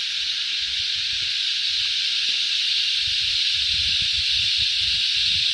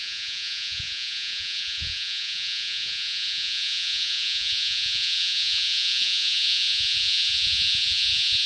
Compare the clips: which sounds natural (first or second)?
first